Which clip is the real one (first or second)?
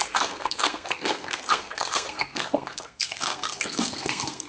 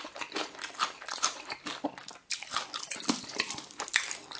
second